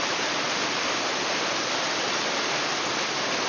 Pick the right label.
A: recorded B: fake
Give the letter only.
B